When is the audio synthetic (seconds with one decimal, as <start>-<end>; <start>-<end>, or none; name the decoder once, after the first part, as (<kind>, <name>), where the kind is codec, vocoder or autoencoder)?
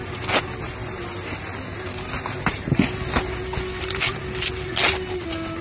none